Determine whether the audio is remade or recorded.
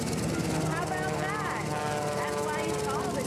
recorded